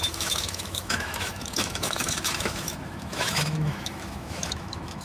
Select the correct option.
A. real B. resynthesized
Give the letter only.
B